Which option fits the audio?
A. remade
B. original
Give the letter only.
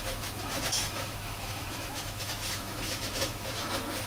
A